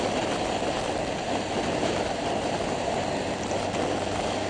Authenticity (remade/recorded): recorded